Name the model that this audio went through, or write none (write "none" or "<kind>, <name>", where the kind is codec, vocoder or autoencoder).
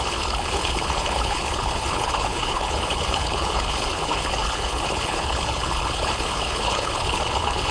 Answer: codec, HILCodec